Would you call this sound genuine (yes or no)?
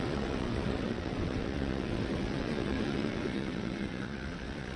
no